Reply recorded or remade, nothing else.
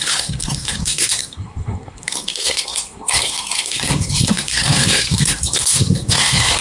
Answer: remade